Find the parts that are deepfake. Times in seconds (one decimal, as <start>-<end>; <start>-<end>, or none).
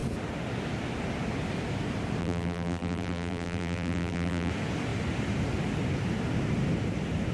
2.2-4.5